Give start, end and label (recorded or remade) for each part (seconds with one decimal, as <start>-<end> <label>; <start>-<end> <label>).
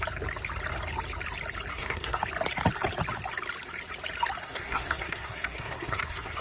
0.0-1.7 recorded; 1.7-2.2 remade; 2.2-4.4 recorded; 4.4-6.4 remade